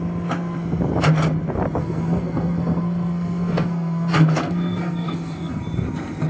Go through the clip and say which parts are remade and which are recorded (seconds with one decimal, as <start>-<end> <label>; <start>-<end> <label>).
0.0-1.8 recorded; 1.8-5.6 remade; 5.6-6.3 recorded

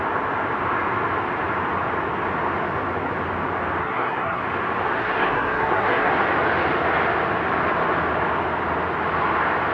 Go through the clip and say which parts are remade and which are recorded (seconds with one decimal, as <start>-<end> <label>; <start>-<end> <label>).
0.0-3.8 recorded; 3.8-4.4 remade; 4.4-5.0 recorded; 5.0-6.1 remade; 6.1-9.7 recorded

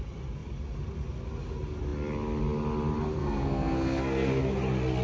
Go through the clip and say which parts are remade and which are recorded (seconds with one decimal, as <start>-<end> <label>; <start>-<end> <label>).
0.0-3.2 recorded; 3.2-4.4 remade; 4.4-5.0 recorded

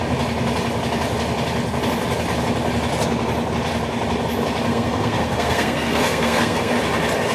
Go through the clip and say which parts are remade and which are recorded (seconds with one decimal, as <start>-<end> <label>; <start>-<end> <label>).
0.0-4.7 recorded; 4.7-6.7 remade; 6.7-7.3 recorded

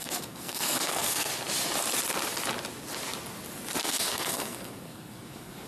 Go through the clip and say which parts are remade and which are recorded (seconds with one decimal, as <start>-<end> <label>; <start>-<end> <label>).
0.0-1.3 remade; 1.3-3.8 recorded; 3.8-5.7 remade

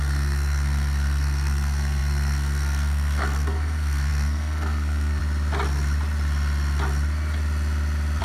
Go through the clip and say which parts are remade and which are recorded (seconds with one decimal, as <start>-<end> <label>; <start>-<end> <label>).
0.0-5.2 remade; 5.2-8.2 recorded